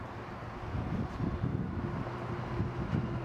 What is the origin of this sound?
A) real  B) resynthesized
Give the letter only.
A